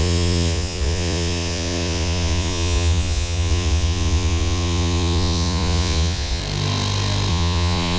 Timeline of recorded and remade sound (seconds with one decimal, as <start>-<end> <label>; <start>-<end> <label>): 0.0-6.4 remade; 6.4-7.3 recorded; 7.3-8.0 remade